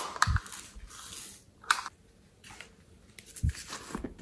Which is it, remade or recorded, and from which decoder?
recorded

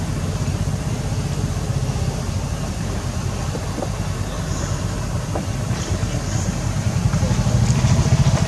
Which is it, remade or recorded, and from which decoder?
remade, vocoder, BigVGAN v2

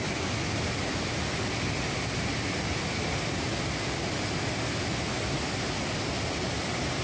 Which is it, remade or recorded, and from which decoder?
recorded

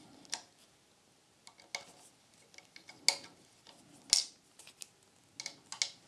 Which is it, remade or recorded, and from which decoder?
recorded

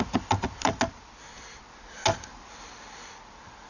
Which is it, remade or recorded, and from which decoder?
recorded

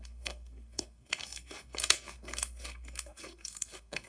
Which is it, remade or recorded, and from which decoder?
remade, codec, SNAC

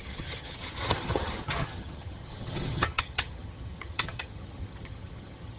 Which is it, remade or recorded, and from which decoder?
remade, vocoder, HiFi-GAN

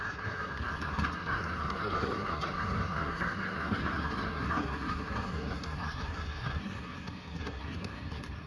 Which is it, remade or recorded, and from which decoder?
remade, codec, SNAC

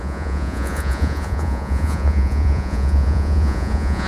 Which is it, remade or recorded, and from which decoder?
remade, vocoder, Vocos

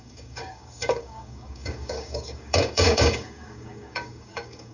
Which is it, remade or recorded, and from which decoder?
remade, codec, DAC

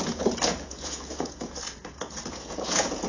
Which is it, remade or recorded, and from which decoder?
remade, vocoder, Vocos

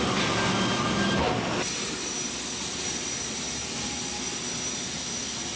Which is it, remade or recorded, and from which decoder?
recorded